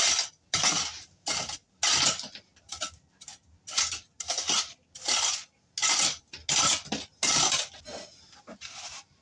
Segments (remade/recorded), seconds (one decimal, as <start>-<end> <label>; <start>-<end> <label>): 0.0-9.2 recorded